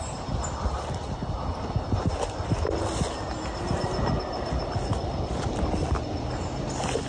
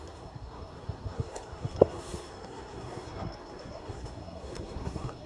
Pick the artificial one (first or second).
second